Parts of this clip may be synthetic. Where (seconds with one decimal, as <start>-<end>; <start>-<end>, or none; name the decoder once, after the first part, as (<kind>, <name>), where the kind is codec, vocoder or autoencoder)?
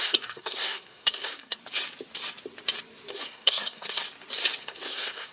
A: 0.0-1.6 (codec, SNAC); 3.1-4.0; 4.6-5.3